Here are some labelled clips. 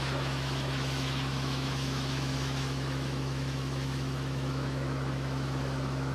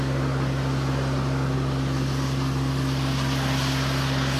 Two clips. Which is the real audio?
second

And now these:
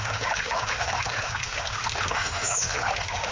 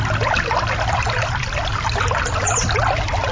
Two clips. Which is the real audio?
second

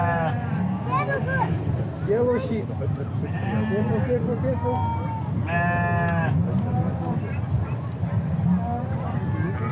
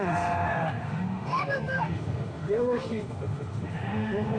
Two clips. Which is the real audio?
first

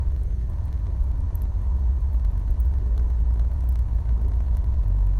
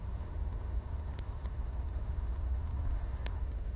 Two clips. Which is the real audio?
first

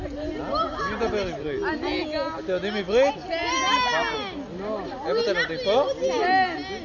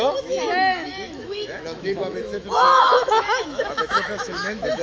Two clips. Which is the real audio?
first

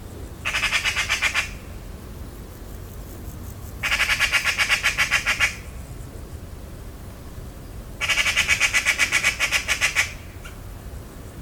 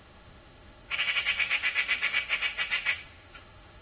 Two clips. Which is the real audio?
first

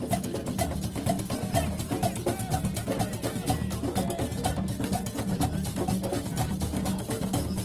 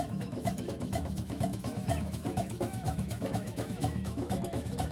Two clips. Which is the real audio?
first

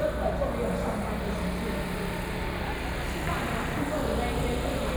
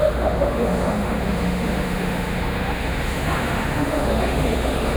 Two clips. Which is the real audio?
first